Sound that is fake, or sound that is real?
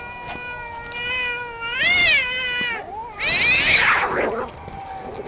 real